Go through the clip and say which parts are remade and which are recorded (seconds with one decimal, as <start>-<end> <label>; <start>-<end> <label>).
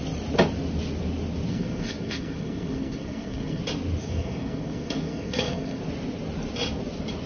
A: 0.0-1.5 recorded; 1.5-3.6 remade; 3.6-4.0 recorded; 4.0-5.8 remade; 5.8-7.3 recorded